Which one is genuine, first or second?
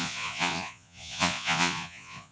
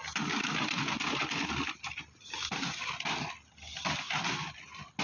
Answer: second